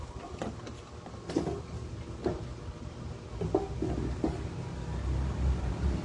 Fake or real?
real